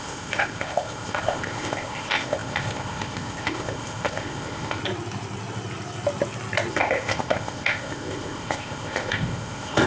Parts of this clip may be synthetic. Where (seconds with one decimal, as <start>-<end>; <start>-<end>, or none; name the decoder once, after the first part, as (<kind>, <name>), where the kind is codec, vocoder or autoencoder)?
0.0-4.8 (codec, ZipCodec); 6.7-9.9